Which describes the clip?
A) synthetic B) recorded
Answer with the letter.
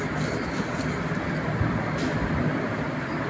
B